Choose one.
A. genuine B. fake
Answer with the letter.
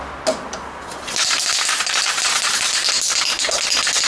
A